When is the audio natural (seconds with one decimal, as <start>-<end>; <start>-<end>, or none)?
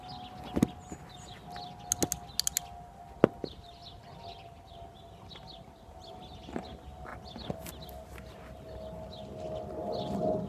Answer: 0.0-10.5